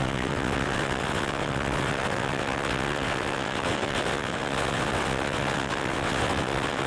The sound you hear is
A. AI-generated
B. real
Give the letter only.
A